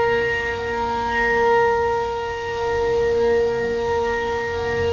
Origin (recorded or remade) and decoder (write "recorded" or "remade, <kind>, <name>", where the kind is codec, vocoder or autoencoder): remade, codec, SNAC